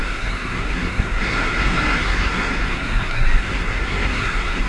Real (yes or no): no